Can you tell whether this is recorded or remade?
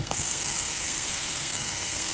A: remade